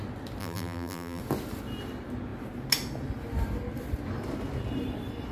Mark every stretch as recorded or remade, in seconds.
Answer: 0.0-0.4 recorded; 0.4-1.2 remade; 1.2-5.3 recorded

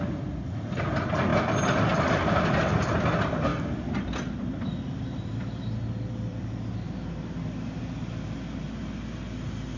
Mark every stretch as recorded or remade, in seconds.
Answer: 0.0-3.5 recorded; 3.5-7.8 remade; 7.8-9.8 recorded

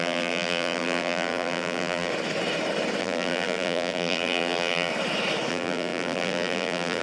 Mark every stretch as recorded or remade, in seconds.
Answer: 0.0-2.1 remade; 2.1-3.0 recorded; 3.0-4.9 remade; 4.9-5.5 recorded; 5.5-7.0 remade

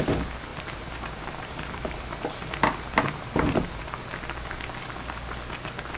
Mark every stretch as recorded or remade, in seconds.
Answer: 0.0-0.5 recorded; 0.5-4.1 remade; 4.1-6.0 recorded

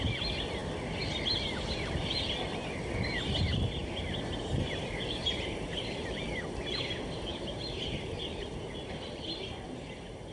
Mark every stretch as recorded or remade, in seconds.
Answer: 0.0-3.8 recorded; 3.8-6.3 remade; 6.3-7.3 recorded; 7.3-8.4 remade; 8.4-10.3 recorded

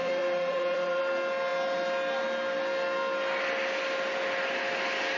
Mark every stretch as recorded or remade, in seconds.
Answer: 0.0-1.0 remade; 1.0-5.2 recorded